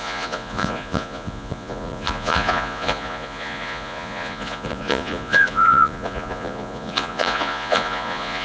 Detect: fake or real fake